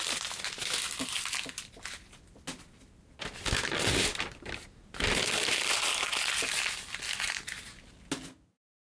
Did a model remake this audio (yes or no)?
no